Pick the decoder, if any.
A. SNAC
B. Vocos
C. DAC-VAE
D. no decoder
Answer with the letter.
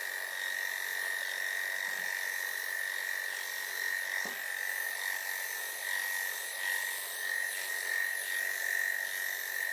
D